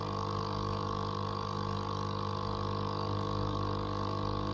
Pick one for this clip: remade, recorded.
remade